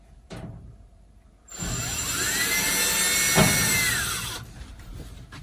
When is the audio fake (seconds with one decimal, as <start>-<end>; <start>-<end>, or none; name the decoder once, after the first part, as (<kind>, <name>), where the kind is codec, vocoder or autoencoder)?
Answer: 0.0-2.7 (vocoder, BigVGAN v2); 4.3-5.4